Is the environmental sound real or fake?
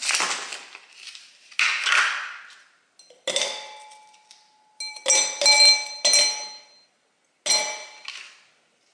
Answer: real